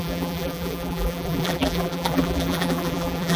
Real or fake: fake